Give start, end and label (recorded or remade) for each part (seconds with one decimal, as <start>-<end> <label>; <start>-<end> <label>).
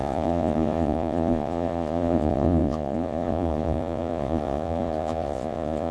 0.0-5.9 remade